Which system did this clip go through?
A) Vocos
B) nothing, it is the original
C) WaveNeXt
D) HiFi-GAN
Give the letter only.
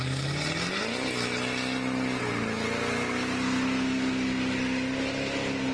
B